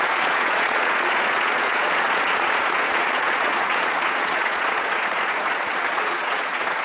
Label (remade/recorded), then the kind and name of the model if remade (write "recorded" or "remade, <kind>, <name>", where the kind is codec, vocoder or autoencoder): remade, vocoder, Vocos